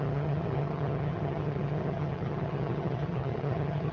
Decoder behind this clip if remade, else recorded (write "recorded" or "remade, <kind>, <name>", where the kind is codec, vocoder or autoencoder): remade, vocoder, HiFi-GAN